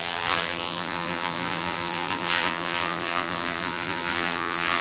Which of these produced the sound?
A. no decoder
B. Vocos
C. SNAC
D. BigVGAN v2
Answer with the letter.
D